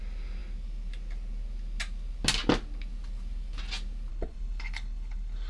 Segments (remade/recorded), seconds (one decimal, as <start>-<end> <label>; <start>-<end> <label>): 0.0-4.1 recorded; 4.1-5.5 remade